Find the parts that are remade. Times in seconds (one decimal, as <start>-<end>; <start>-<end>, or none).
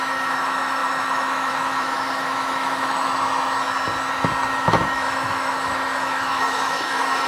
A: 0.0-3.1; 4.5-7.3